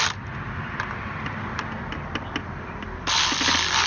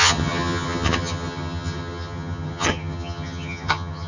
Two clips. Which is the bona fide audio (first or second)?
first